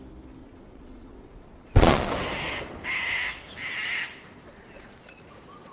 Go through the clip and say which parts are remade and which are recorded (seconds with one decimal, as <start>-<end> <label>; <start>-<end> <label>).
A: 0.0-0.4 recorded; 0.4-2.1 remade; 2.1-4.5 recorded; 4.5-5.1 remade; 5.1-5.7 recorded